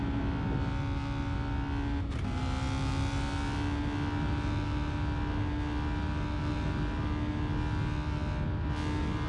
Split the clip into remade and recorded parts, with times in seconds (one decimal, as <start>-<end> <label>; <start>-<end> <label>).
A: 0.0-9.3 recorded